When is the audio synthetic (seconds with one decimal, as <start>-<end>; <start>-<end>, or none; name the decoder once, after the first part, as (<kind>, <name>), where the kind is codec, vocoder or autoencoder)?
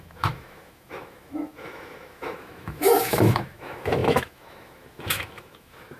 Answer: 0.0-6.0 (autoencoder, DAC-VAE)